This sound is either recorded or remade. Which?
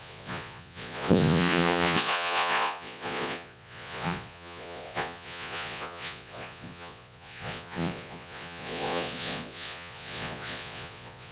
remade